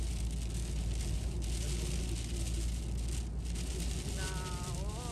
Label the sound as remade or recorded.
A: recorded